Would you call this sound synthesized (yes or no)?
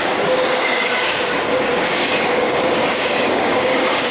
yes